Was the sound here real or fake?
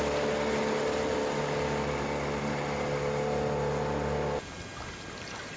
real